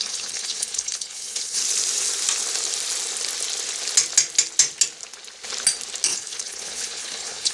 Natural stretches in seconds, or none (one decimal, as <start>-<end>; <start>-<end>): 1.6-6.1